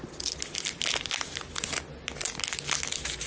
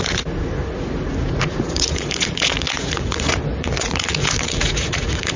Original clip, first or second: first